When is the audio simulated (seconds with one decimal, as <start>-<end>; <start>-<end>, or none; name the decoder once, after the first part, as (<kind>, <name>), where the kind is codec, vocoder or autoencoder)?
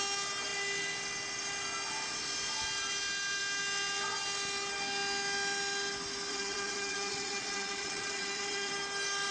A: 6.3-8.7 (vocoder, Vocos)